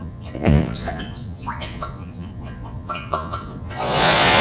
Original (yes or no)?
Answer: no